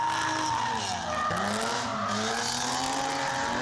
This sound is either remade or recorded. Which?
recorded